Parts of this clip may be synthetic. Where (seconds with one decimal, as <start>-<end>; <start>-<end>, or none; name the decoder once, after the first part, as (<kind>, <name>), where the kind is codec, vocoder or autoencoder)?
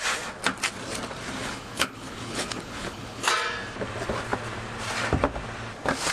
1.4-3.3 (codec, HILCodec)